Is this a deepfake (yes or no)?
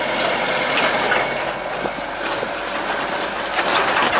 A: no